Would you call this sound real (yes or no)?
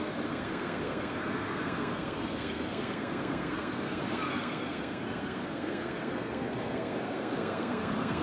no